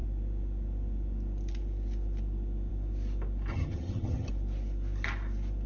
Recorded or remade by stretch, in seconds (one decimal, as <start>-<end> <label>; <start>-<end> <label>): 0.0-3.5 recorded; 3.5-4.3 remade; 4.3-5.7 recorded

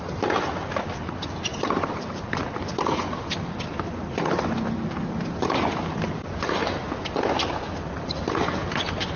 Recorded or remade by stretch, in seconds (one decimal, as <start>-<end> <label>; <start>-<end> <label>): 0.0-9.2 recorded